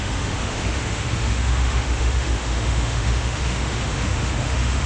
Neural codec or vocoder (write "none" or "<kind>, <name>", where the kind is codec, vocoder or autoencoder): autoencoder, DAC-VAE